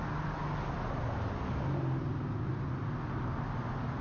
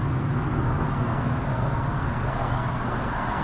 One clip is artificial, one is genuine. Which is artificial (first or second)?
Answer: second